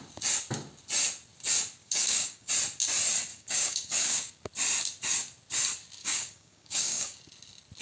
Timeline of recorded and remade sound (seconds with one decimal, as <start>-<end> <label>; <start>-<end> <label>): 0.0-1.8 recorded; 1.8-2.5 remade; 2.5-3.3 recorded; 3.3-4.3 remade; 4.3-6.0 recorded; 6.0-7.2 remade; 7.2-7.8 recorded